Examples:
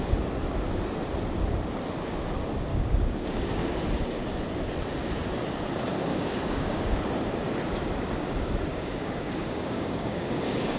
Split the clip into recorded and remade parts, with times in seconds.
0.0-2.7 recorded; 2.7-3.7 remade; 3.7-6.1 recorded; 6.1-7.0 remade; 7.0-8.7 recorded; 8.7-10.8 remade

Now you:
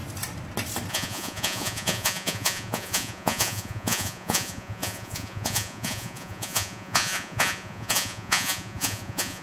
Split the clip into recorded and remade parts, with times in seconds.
0.0-0.9 recorded; 0.9-9.4 remade